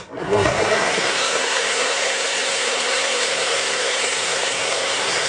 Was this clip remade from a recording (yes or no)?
yes